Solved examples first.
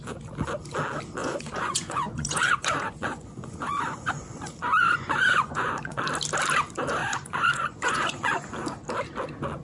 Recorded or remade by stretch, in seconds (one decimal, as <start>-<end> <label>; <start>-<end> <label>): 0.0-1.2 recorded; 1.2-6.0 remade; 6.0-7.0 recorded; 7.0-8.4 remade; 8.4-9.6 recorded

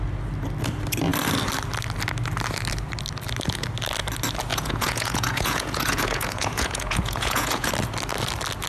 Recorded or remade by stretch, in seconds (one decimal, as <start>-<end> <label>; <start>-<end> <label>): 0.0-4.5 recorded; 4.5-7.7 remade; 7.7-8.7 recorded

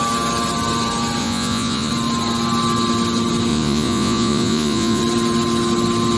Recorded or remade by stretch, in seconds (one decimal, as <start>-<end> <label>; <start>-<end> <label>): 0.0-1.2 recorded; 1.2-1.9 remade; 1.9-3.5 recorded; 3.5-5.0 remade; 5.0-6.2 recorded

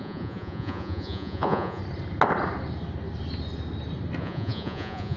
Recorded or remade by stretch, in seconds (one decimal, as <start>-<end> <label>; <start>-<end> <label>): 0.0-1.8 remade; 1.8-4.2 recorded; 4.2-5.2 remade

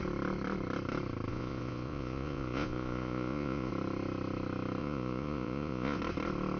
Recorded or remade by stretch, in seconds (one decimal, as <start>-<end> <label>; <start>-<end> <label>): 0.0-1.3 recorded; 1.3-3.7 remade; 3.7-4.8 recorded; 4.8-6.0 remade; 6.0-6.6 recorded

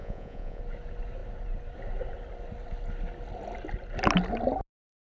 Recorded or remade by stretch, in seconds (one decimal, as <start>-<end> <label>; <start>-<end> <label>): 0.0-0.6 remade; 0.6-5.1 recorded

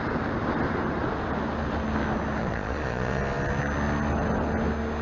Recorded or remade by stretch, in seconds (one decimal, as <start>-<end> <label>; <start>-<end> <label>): 0.0-2.4 recorded; 2.4-3.2 remade; 3.2-5.0 recorded